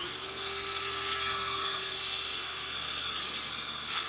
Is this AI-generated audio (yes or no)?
yes